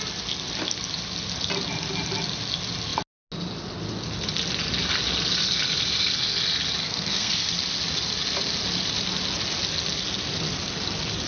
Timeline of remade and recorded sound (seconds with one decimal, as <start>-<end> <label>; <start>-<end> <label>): 0.0-6.8 recorded; 6.8-7.5 remade; 7.5-11.3 recorded